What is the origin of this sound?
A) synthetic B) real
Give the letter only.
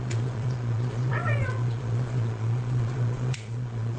A